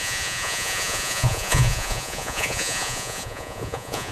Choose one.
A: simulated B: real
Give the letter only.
A